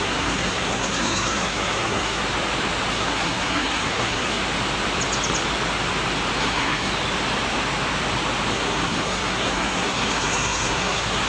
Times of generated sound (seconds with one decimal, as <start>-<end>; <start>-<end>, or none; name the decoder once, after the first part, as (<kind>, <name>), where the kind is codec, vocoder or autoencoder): 0.0-2.2 (codec, SNAC); 2.9-4.4; 6.4-6.9; 8.5-11.3